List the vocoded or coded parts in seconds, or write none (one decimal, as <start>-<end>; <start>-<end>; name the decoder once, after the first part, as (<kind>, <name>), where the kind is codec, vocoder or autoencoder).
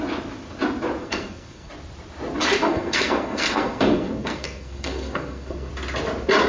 1.0-1.7 (codec, SNAC); 2.6-5.7